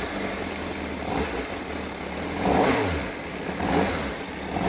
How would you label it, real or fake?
real